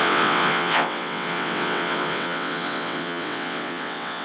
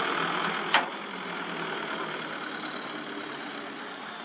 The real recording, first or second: second